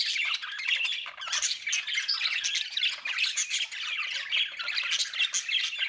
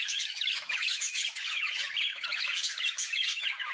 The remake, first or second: second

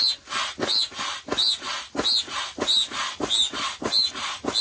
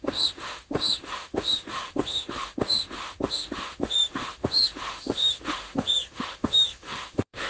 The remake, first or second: second